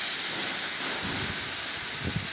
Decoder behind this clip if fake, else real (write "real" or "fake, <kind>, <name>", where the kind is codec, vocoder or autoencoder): real